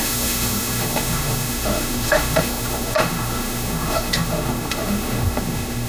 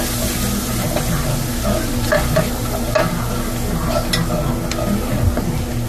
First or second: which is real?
second